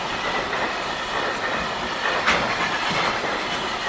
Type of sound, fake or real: real